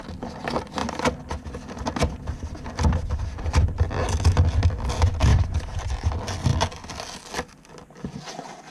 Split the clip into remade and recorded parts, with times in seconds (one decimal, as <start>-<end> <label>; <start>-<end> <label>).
0.0-5.3 recorded; 5.3-6.1 remade; 6.1-8.7 recorded